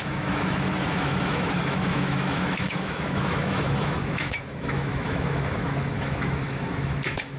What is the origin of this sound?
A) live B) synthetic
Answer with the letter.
B